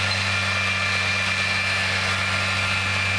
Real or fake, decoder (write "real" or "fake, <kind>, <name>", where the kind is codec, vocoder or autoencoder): real